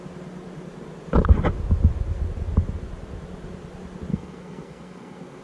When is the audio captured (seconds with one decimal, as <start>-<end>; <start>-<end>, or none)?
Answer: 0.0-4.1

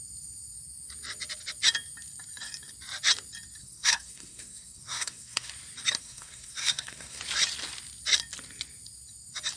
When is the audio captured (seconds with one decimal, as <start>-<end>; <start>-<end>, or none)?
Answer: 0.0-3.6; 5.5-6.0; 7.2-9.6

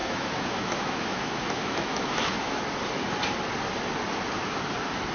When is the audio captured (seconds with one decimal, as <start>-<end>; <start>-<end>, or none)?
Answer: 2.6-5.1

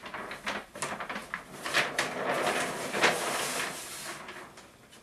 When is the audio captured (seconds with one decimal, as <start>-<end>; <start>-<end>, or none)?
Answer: 0.0-5.0

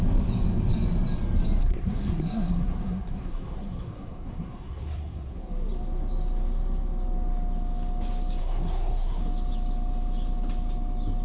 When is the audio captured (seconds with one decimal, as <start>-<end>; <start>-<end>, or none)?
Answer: 0.0-1.6; 5.5-8.4; 9.2-11.2

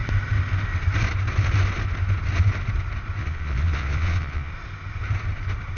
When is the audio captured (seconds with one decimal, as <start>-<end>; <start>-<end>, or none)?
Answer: 0.0-3.2; 4.5-5.8

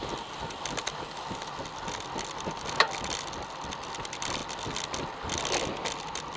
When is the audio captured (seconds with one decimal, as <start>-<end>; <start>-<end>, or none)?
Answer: 0.0-6.4

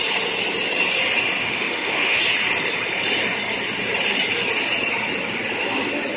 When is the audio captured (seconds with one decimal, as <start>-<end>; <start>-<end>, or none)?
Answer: 0.0-1.4; 2.2-6.2